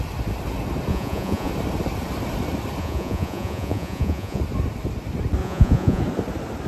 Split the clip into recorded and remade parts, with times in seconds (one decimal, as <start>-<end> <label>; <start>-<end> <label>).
0.0-0.9 recorded; 0.9-1.5 remade; 1.5-2.8 recorded; 2.8-4.4 remade; 4.4-5.4 recorded; 5.4-6.0 remade; 6.0-6.7 recorded